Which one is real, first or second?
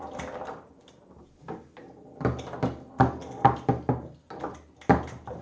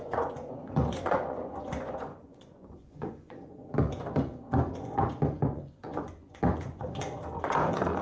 first